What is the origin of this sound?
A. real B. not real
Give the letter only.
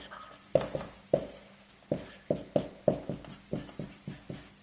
A